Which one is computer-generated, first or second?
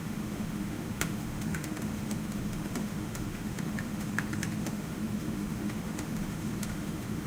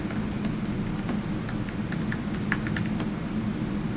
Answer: first